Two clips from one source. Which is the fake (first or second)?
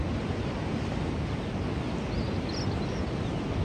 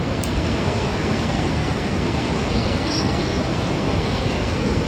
second